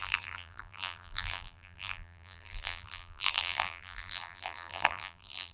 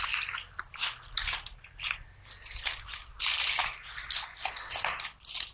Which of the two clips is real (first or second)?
second